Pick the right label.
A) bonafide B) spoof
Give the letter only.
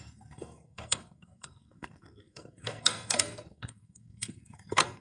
B